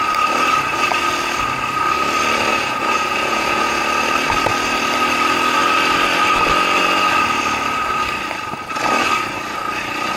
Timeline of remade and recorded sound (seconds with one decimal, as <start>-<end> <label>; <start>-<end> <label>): 0.0-2.5 recorded; 2.5-3.8 remade; 3.8-10.2 recorded